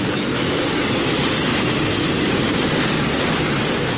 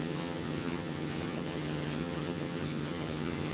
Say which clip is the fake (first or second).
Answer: second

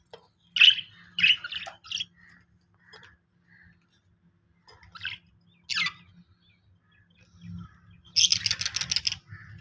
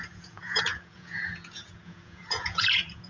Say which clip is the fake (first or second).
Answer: second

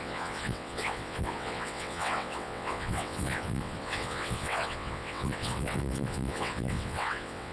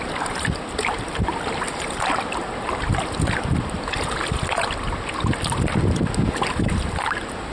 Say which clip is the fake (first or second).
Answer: first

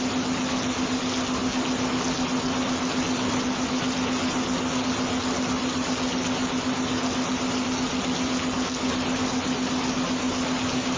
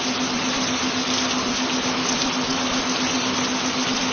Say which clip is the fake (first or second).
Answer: second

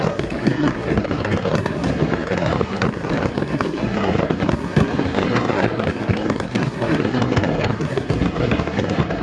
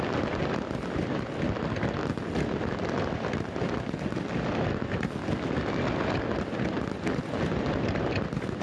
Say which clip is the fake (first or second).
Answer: first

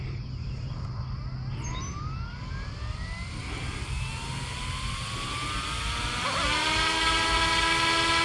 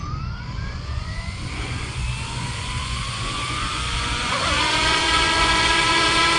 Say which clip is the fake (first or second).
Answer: second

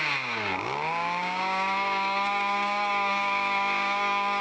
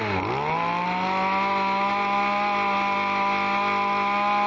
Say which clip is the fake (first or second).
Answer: first